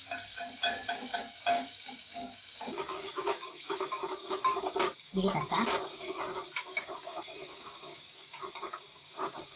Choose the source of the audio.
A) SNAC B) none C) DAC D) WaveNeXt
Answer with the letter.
C